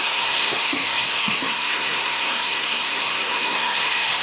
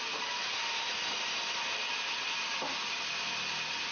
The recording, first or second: second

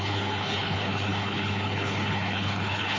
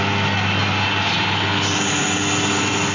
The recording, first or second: second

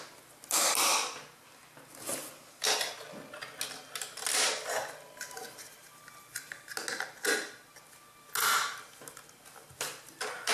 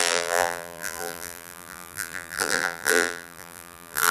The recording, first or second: first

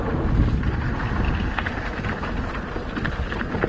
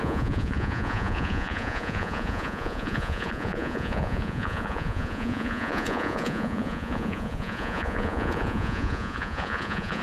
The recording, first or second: first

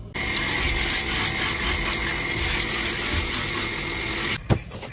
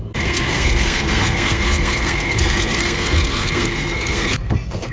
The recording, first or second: first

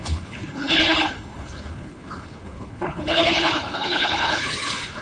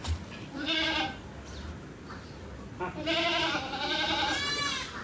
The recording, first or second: second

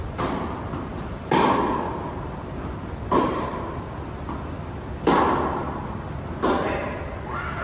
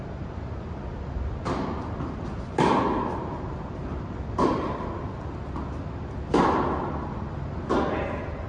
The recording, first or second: second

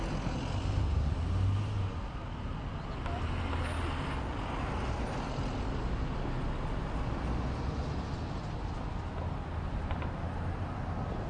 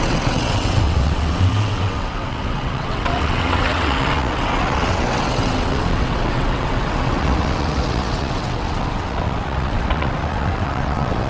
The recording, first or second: first